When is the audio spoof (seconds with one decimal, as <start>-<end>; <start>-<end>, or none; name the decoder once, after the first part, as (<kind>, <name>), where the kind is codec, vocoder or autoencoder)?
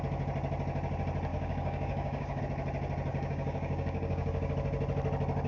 1.3-2.4 (codec, DAC); 3.1-4.5